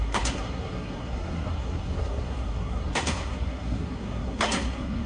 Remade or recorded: remade